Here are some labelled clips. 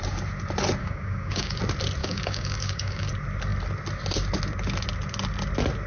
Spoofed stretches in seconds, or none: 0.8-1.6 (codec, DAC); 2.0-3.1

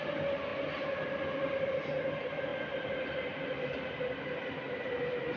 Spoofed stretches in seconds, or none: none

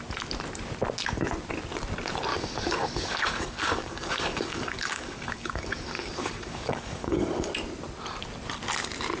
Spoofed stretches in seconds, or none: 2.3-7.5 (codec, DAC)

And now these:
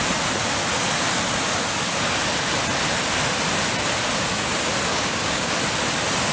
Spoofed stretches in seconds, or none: 4.9-5.5 (codec, DAC)